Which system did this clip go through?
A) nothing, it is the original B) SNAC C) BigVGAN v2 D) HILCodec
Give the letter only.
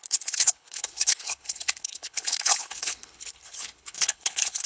D